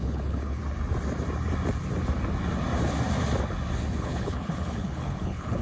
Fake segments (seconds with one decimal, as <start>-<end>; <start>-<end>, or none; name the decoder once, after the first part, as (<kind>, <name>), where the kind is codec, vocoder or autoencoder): 0.0-0.6 (codec, HILCodec); 4.0-5.6